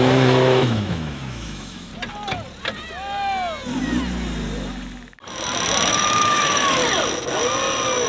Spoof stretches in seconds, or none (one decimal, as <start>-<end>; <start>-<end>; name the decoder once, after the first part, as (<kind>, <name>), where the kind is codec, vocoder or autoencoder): 0.0-1.9 (autoencoder, DAC-VAE); 5.9-6.8